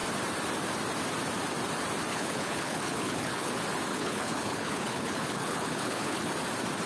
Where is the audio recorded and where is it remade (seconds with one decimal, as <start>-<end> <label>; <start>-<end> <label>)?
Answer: 0.0-2.1 recorded; 2.1-3.5 remade; 3.5-3.9 recorded; 3.9-6.3 remade; 6.3-6.9 recorded